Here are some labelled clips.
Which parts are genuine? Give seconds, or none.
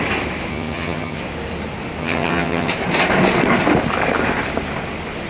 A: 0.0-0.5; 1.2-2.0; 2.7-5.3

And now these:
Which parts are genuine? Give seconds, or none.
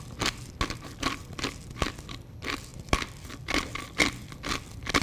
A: 0.0-5.0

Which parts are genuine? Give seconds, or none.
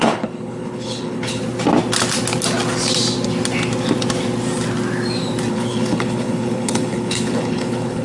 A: 1.4-5.5